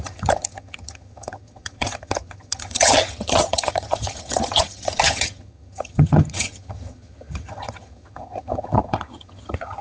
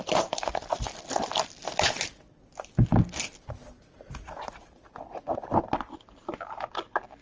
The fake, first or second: first